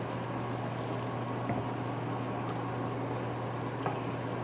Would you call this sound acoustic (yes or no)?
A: yes